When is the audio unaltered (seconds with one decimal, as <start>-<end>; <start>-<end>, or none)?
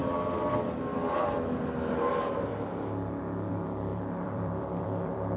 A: 0.0-2.0; 2.5-3.5